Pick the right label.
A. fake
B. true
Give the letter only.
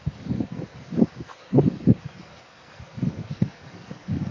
A